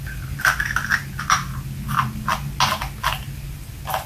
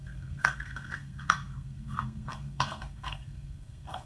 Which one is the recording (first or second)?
first